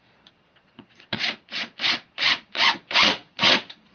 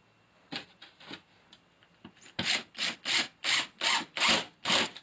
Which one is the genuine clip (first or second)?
second